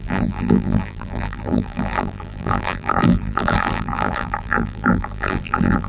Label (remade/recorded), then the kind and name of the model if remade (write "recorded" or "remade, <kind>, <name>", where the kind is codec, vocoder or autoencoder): remade, vocoder, BigVGAN v2